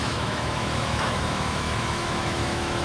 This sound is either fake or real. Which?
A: fake